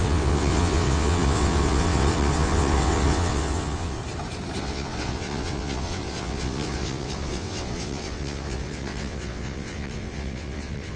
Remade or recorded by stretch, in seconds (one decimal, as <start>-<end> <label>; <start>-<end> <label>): 0.0-4.0 remade; 4.0-4.6 recorded; 4.6-11.0 remade